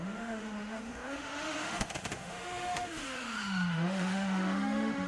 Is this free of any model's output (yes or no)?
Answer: no